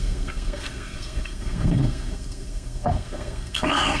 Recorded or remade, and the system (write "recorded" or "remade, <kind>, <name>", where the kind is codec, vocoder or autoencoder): remade, codec, SNAC